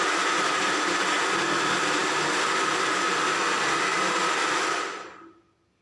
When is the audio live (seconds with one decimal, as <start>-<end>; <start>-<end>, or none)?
0.0-3.9; 4.5-5.8